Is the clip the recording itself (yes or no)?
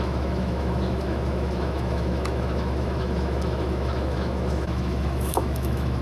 no